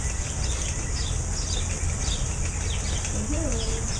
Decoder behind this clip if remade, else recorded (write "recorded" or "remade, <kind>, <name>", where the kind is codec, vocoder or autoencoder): recorded